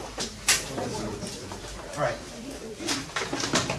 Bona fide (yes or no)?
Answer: no